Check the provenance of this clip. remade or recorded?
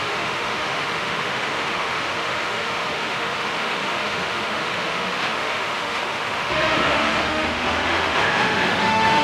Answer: remade